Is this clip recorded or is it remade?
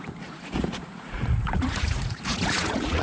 remade